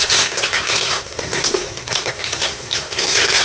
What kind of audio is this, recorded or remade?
remade